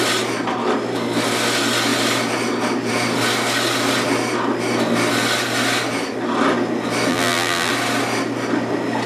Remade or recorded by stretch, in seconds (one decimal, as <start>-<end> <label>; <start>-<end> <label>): 0.0-7.1 recorded; 7.1-7.7 remade; 7.7-9.1 recorded